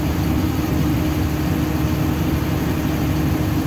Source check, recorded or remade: recorded